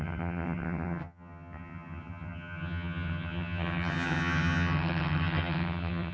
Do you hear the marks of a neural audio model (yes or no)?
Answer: yes